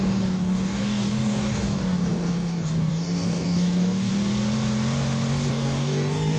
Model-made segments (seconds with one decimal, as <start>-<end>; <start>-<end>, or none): 0.0-4.1; 5.5-6.4